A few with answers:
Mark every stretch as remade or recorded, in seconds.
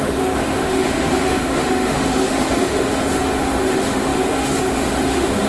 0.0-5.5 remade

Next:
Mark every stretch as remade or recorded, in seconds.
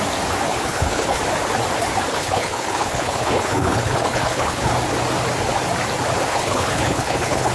0.0-0.6 recorded; 0.6-1.2 remade; 1.2-2.1 recorded; 2.1-4.7 remade; 4.7-6.3 recorded; 6.3-7.5 remade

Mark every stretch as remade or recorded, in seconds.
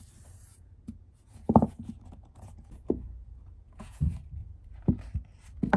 0.0-0.5 recorded; 0.5-4.0 remade; 4.0-4.4 recorded; 4.4-4.9 remade; 4.9-5.8 recorded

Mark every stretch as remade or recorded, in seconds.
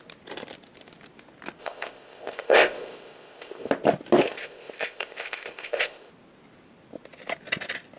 0.0-1.6 recorded; 1.6-3.7 remade; 3.7-4.2 recorded; 4.2-6.1 remade; 6.1-8.0 recorded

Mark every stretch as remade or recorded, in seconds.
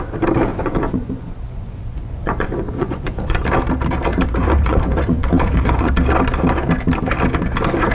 0.0-0.5 recorded; 0.5-3.4 remade; 3.4-4.1 recorded; 4.1-5.9 remade; 5.9-7.9 recorded